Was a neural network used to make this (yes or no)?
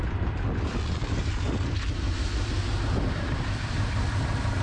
yes